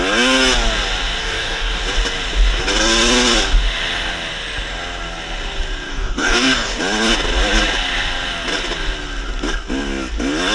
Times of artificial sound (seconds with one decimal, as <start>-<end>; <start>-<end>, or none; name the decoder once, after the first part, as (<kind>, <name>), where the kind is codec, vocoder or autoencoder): 1.2-1.8 (codec, DAC); 5.9-6.8